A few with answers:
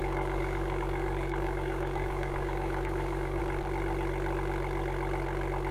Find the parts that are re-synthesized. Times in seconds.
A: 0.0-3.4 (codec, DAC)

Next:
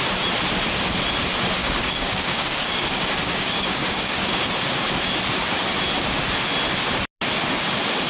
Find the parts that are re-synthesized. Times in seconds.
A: 1.6-4.5 (codec, DAC)